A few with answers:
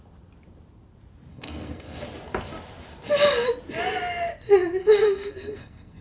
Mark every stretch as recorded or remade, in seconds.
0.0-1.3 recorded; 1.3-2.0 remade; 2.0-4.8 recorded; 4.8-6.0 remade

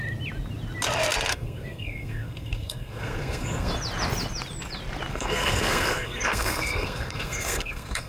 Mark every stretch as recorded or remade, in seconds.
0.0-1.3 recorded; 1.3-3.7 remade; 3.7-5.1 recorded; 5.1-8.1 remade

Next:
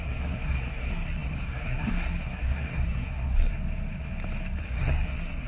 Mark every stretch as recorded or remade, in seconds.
0.0-3.5 remade; 3.5-4.6 recorded; 4.6-5.5 remade

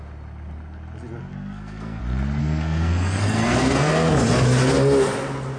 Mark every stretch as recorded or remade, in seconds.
0.0-1.3 recorded; 1.3-2.0 remade; 2.0-2.4 recorded; 2.4-3.9 remade; 3.9-5.6 recorded

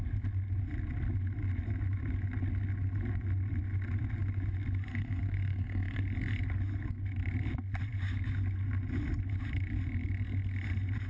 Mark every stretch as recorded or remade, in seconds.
0.0-4.9 recorded; 4.9-6.0 remade; 6.0-11.1 recorded

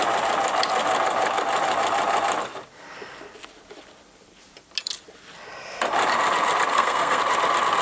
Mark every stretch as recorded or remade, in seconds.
0.0-6.7 recorded; 6.7-7.2 remade; 7.2-7.8 recorded